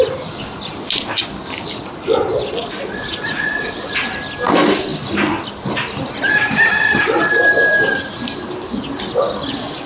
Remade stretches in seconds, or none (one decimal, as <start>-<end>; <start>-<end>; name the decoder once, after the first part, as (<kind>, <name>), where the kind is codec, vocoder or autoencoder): 2.6-4.1 (vocoder, Vocos)